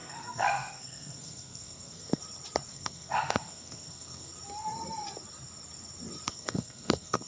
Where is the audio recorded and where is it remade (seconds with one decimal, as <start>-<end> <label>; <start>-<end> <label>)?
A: 0.0-2.2 remade; 2.2-2.7 recorded; 2.7-4.3 remade; 4.3-6.3 recorded; 6.3-7.3 remade